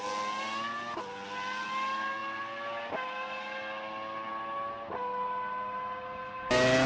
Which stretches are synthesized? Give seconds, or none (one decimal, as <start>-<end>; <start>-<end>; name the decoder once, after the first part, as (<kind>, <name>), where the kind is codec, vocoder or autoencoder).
none